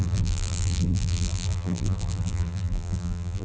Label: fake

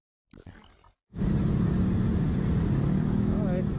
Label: real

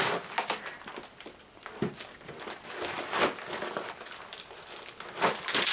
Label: real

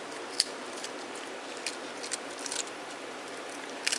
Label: fake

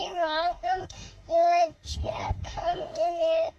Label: fake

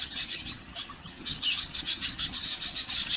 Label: fake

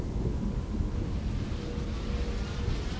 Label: real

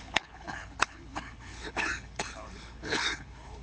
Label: fake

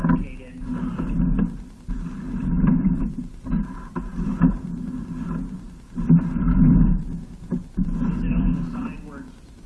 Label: real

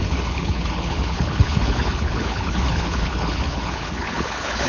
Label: fake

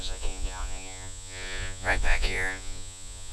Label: fake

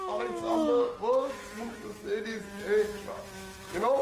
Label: fake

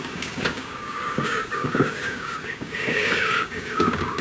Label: fake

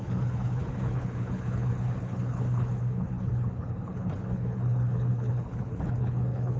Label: fake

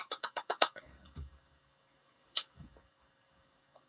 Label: fake